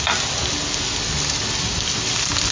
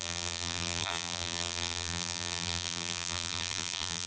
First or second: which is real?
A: first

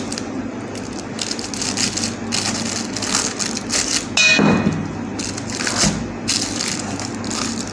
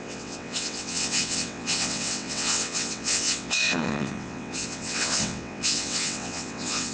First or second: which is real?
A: first